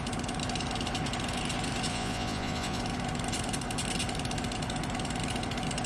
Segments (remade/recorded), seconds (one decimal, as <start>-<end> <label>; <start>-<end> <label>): 0.0-1.9 recorded; 1.9-2.8 remade; 2.8-5.9 recorded